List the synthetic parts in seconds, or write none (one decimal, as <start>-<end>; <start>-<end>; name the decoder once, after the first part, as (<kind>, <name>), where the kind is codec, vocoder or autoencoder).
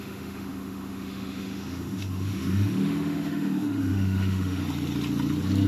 0.0-4.6 (autoencoder, DAC-VAE)